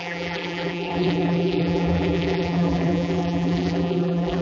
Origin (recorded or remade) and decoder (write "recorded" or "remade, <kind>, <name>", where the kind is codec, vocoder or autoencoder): remade, vocoder, BigVGAN v2